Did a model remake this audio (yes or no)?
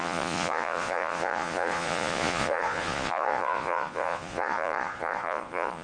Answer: yes